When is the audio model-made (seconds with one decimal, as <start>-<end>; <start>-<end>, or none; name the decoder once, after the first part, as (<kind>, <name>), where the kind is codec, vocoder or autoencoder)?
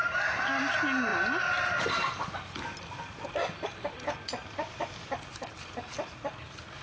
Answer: none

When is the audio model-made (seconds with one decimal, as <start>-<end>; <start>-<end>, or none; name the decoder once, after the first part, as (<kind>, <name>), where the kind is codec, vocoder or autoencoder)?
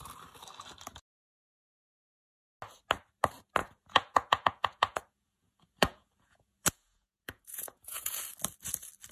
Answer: 3.6-8.2 (vocoder, Vocos)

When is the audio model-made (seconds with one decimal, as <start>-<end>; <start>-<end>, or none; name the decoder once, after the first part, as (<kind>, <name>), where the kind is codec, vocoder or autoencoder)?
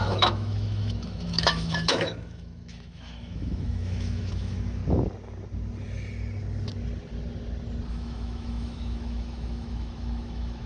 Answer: 0.0-4.8 (autoencoder, DAC-VAE); 7.9-10.7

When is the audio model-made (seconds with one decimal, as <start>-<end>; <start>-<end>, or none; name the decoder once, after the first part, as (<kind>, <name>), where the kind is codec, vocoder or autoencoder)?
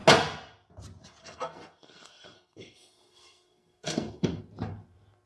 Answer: 1.2-4.4 (codec, SNAC)